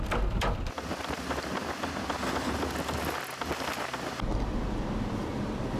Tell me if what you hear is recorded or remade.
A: recorded